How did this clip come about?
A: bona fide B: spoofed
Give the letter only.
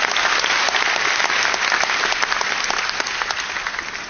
A